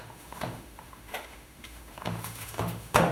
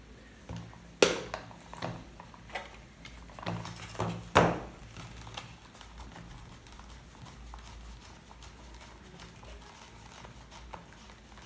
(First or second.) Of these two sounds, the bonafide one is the second